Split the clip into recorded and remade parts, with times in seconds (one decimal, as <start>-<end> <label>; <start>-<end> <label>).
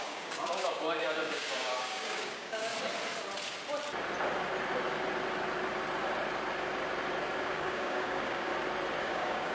0.0-2.7 remade; 2.7-7.4 recorded; 7.4-8.5 remade; 8.5-9.0 recorded; 9.0-9.5 remade